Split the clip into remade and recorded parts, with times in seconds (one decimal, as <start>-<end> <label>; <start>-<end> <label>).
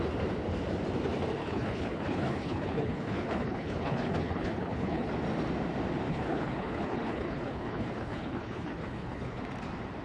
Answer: 0.0-1.4 recorded; 1.4-5.1 remade; 5.1-6.1 recorded; 6.1-9.4 remade; 9.4-10.0 recorded